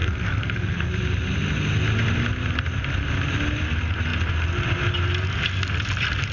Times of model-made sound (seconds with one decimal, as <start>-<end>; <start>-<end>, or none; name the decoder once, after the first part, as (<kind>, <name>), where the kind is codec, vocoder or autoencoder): 0.0-0.9 (codec, SNAC)